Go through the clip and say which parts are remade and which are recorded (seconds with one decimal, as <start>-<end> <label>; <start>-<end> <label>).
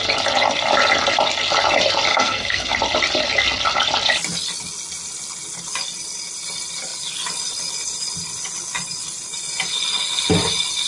0.0-2.1 recorded; 2.1-2.7 remade; 2.7-10.9 recorded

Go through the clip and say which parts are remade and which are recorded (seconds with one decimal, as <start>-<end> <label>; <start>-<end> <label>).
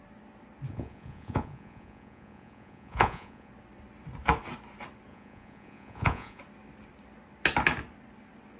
0.0-0.7 recorded; 0.7-3.5 remade; 3.5-5.1 recorded; 5.1-6.4 remade; 6.4-8.6 recorded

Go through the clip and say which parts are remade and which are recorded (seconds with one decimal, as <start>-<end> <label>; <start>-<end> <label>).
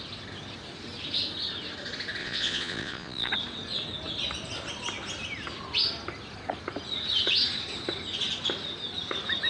0.0-2.2 recorded; 2.2-3.3 remade; 3.3-9.5 recorded